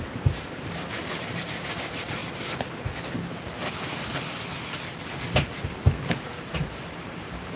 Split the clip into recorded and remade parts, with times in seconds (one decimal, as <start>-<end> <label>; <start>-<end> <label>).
0.0-2.2 remade; 2.2-6.2 recorded; 6.2-7.6 remade